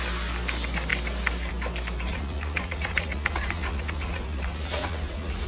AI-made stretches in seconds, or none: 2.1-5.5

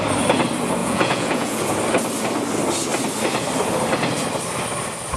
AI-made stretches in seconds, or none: 0.8-1.6

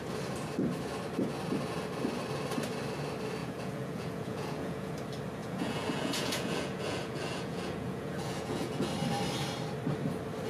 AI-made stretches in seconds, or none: 3.4-4.9; 5.4-8.9

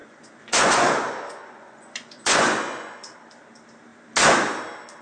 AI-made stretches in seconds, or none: 0.0-3.0

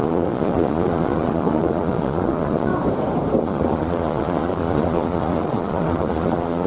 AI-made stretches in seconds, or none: 0.0-2.7; 3.4-6.7

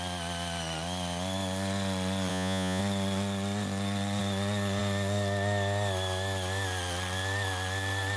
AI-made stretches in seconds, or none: 2.3-2.8